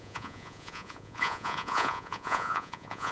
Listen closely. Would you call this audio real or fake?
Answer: fake